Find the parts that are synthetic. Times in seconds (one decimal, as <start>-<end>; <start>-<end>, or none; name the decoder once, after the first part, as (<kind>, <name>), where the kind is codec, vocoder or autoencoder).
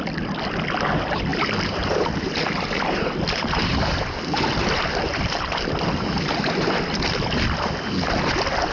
1.3-5.9 (vocoder, BigVGAN v2)